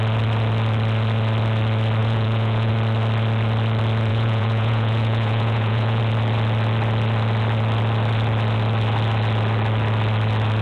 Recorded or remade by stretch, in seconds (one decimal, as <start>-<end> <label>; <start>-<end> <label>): 0.0-2.0 recorded; 2.0-2.7 remade; 2.7-4.1 recorded; 4.1-6.0 remade; 6.0-10.6 recorded